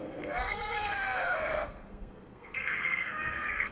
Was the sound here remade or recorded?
remade